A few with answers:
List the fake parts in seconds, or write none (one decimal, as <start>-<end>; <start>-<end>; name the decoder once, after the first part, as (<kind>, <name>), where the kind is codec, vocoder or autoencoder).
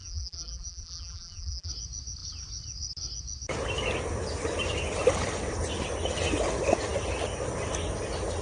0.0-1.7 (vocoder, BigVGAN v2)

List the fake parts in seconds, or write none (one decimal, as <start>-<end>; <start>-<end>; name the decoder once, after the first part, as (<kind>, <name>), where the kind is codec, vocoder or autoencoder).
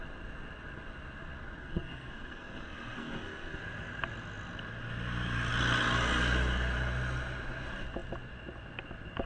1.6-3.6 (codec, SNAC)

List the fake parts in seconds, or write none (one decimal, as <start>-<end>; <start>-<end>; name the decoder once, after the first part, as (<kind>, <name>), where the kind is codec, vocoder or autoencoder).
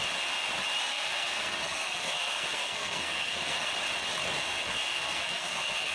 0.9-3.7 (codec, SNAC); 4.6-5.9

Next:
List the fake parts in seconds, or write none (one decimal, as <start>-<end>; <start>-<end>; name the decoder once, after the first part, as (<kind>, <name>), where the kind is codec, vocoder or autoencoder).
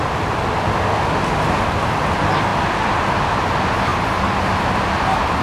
none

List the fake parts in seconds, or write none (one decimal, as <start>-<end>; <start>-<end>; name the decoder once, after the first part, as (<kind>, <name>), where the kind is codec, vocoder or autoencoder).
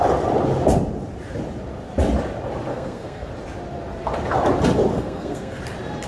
2.7-3.3 (codec, SNAC); 4.9-5.6